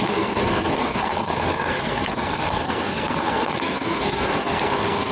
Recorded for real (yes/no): no